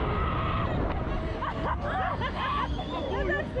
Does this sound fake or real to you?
real